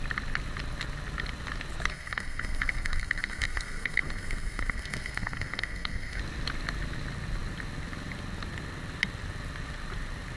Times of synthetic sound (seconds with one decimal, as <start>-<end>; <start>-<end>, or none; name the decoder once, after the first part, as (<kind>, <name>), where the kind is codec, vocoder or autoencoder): 1.9-6.2 (codec, SNAC)

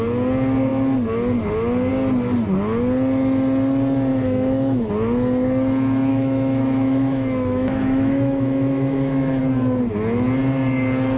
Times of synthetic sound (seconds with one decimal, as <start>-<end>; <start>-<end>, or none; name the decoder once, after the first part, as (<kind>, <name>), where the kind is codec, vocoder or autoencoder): 4.1-4.9 (autoencoder, DAC-VAE); 6.1-9.4

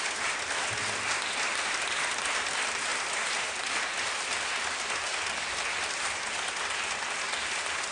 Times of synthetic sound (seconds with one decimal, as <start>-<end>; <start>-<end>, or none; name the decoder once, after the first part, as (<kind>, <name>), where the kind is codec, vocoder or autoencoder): none